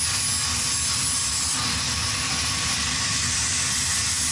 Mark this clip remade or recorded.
recorded